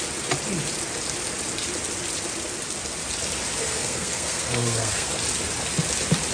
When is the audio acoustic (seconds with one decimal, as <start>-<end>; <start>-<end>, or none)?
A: 0.0-3.6; 5.1-6.3